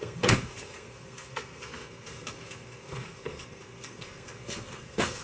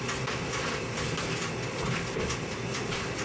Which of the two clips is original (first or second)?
second